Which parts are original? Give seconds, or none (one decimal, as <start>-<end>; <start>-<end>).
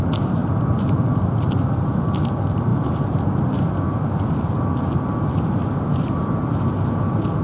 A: 0.0-7.4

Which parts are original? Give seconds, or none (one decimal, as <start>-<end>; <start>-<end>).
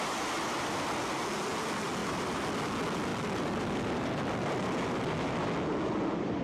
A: 0.0-2.0; 2.7-3.1; 4.3-6.4